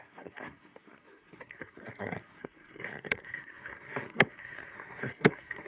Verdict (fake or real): fake